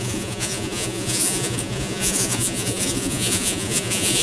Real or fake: fake